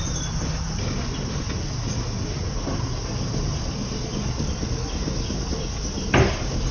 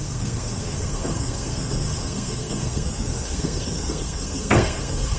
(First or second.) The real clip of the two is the first